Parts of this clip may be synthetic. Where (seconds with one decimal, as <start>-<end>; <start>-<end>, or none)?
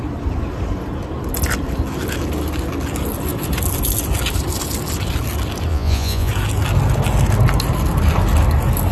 5.7-6.3